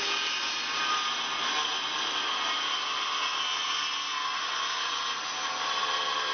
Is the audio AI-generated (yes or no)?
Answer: no